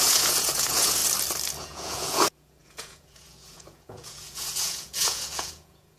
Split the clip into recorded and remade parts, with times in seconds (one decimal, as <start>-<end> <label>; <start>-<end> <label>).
0.0-1.0 remade; 1.0-1.6 recorded; 1.6-6.0 remade

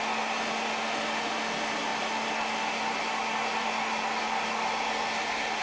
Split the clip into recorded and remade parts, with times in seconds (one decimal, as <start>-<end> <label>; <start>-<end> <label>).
0.0-5.6 recorded